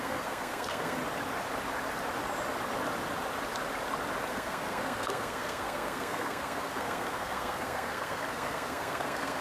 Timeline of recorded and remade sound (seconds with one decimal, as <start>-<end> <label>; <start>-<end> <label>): 0.0-1.0 remade; 1.0-4.3 recorded; 4.3-9.4 remade